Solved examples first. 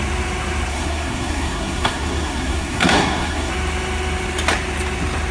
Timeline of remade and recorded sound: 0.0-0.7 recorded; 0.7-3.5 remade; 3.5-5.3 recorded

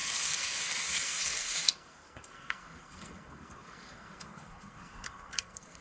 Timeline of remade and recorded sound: 0.0-5.8 remade

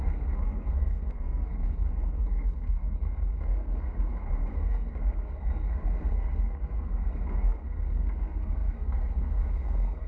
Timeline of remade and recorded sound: 0.0-10.1 remade

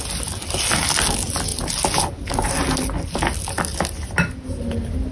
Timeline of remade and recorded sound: 0.0-5.1 recorded